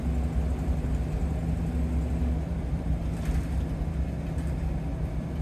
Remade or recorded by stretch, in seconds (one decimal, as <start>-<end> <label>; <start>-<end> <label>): 0.0-0.5 recorded; 0.5-1.4 remade; 1.4-2.4 recorded; 2.4-3.0 remade; 3.0-5.4 recorded